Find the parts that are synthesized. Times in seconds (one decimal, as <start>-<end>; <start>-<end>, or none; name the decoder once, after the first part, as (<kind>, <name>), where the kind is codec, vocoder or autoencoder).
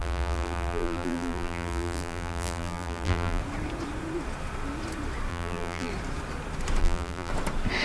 0.0-3.4 (vocoder, BigVGAN v2); 5.3-5.9; 6.8-7.3